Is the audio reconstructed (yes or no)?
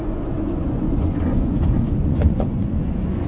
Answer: yes